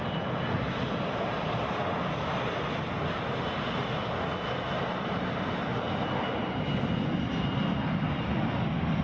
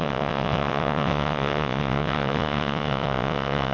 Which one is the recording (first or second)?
first